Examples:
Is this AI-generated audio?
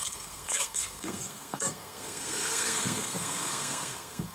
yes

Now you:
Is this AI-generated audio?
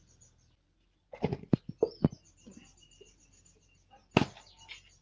no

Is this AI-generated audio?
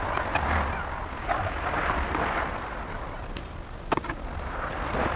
no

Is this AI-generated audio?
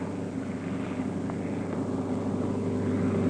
no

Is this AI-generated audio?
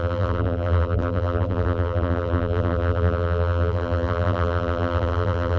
yes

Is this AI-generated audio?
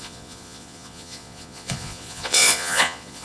yes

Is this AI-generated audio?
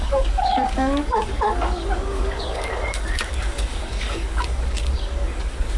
yes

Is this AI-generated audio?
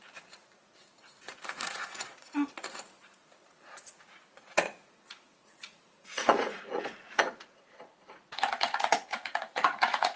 yes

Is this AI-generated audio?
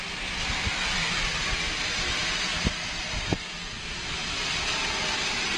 no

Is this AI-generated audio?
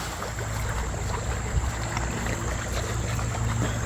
no